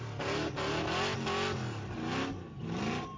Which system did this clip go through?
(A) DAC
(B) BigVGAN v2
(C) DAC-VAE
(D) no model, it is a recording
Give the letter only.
D